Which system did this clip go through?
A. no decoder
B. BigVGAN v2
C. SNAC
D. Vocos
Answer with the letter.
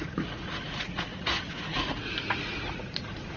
D